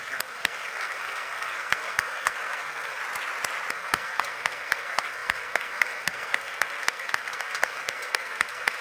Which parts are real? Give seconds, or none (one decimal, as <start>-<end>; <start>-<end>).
3.0-3.7